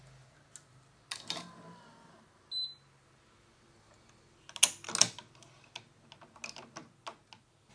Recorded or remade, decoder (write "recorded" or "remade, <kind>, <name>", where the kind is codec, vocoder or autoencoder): recorded